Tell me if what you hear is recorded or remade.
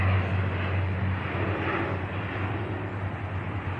recorded